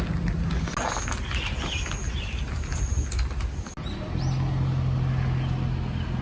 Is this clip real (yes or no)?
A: yes